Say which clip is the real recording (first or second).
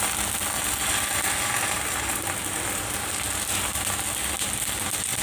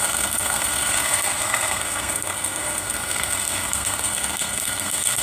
first